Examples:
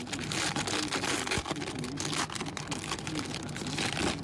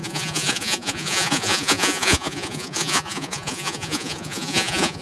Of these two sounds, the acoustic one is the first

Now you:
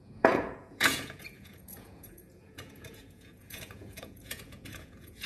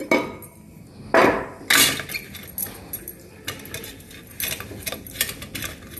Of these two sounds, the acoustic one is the second